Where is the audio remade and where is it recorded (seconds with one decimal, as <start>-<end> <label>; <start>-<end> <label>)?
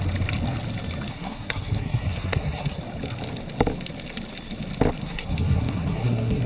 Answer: 0.0-1.1 recorded; 1.1-2.8 remade; 2.8-5.0 recorded; 5.0-6.5 remade